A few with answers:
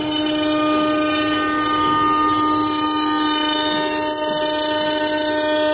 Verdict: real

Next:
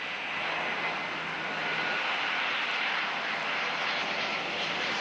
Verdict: real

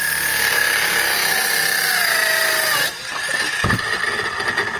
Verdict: real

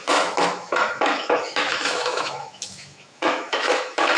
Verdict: fake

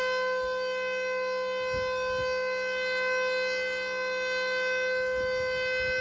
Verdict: real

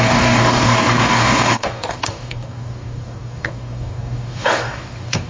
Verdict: fake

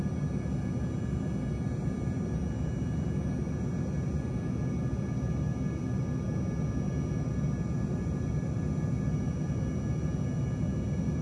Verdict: real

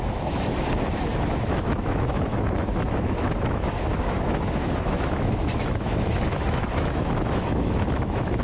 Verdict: fake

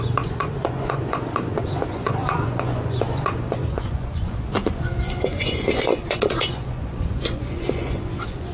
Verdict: fake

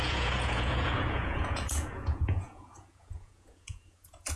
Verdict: fake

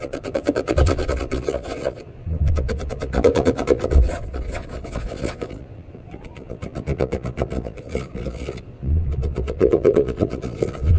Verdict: fake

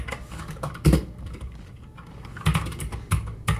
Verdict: fake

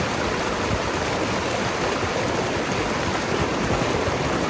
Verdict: real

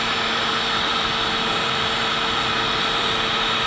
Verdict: fake